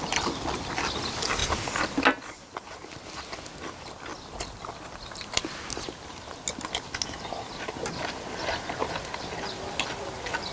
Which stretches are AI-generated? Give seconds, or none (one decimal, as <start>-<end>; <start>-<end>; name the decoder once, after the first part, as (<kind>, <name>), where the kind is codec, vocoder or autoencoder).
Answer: none